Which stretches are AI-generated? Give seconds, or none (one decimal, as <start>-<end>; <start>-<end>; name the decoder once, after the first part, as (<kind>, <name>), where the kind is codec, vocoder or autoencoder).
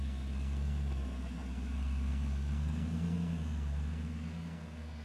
0.0-5.0 (codec, SNAC)